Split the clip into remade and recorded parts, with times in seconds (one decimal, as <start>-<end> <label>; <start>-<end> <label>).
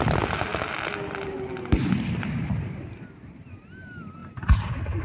0.0-5.0 recorded